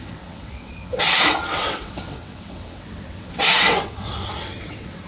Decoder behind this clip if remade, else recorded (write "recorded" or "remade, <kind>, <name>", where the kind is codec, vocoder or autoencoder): remade, vocoder, WaveNeXt